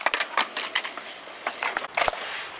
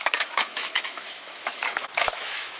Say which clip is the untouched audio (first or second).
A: first